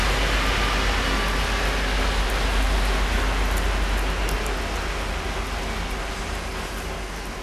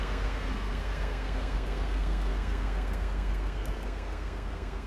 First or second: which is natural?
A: first